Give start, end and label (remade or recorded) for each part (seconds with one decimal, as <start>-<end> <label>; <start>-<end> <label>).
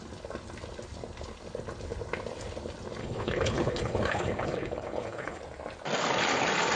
0.0-3.0 recorded; 3.0-5.4 remade; 5.4-6.8 recorded